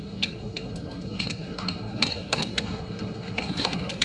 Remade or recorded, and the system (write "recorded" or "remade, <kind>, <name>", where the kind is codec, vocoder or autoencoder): remade, codec, SNAC